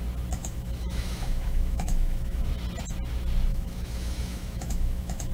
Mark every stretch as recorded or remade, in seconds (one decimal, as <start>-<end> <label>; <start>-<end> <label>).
0.0-0.4 recorded; 0.4-2.5 remade; 2.5-3.5 recorded; 3.5-5.3 remade